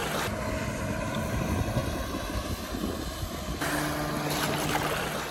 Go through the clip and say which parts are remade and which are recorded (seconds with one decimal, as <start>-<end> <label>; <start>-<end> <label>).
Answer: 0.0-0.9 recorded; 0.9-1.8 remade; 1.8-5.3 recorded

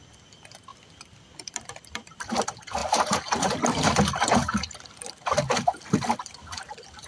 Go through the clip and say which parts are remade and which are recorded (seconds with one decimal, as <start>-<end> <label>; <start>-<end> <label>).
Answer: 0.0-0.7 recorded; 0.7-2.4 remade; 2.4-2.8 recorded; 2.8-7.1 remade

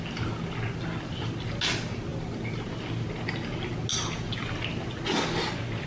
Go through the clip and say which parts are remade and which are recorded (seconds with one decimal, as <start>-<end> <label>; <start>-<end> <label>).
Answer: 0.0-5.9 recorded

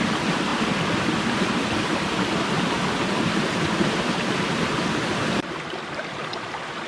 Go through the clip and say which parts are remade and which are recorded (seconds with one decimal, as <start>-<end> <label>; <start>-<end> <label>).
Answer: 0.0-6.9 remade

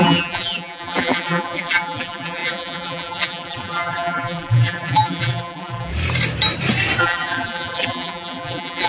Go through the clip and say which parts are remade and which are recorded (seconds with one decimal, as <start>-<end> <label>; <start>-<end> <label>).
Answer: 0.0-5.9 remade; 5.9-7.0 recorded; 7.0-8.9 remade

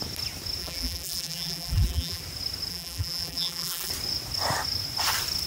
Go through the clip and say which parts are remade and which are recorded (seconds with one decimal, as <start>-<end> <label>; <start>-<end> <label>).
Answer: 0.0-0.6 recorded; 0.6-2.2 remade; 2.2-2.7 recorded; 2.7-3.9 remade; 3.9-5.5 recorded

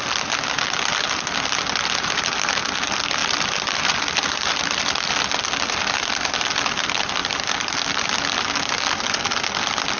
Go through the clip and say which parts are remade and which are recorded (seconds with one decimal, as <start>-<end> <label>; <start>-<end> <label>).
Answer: 0.0-3.2 recorded; 3.2-4.9 remade; 4.9-10.0 recorded

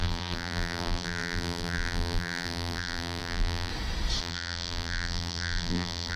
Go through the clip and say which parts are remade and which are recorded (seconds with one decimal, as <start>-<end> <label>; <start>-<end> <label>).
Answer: 0.0-3.7 remade; 3.7-4.2 recorded; 4.2-6.2 remade